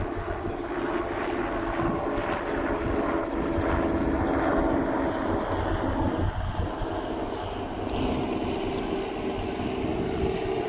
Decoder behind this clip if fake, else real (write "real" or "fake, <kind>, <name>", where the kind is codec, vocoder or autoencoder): real